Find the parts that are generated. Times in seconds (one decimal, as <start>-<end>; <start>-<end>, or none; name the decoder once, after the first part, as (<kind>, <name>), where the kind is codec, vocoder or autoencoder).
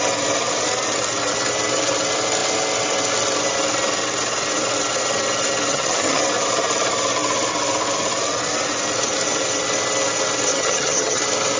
5.7-6.2 (vocoder, HiFi-GAN); 10.5-11.2